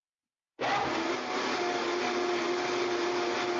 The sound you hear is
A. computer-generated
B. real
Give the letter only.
B